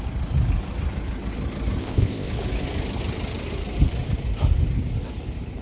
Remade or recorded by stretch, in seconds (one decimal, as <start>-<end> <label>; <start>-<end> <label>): 0.0-1.8 recorded; 1.8-2.3 remade; 2.3-5.6 recorded